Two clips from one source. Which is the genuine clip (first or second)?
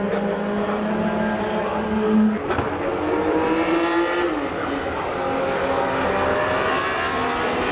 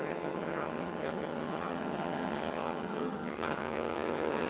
first